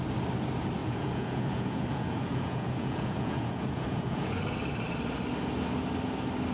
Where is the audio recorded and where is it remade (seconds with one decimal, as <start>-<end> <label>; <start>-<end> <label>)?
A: 0.0-0.8 recorded; 0.8-4.4 remade; 4.4-6.5 recorded